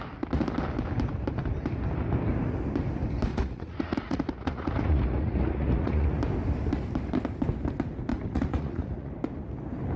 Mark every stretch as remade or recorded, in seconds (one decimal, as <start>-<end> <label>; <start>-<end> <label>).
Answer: 0.0-3.3 recorded; 3.3-6.2 remade; 6.2-8.1 recorded; 8.1-9.1 remade; 9.1-10.0 recorded